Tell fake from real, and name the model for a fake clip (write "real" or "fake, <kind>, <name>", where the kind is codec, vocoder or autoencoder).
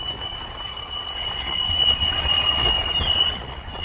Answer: fake, vocoder, Vocos